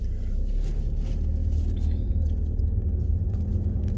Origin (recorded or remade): recorded